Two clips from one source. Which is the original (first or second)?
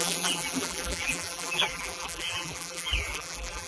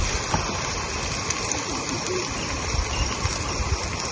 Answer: second